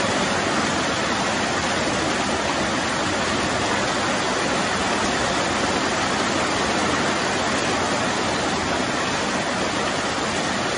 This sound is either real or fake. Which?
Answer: real